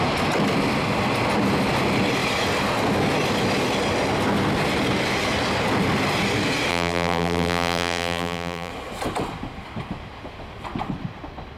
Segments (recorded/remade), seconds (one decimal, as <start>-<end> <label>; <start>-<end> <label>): 0.0-6.7 recorded; 6.7-8.7 remade; 8.7-11.6 recorded